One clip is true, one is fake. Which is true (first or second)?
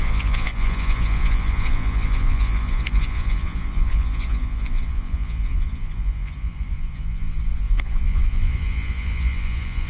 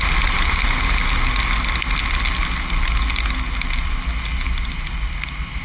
second